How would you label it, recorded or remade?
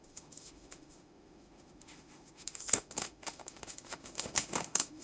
remade